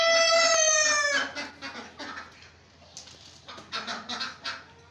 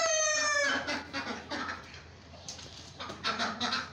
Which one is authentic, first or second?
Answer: first